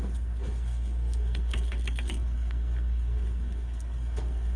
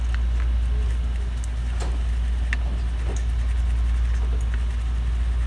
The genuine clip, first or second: second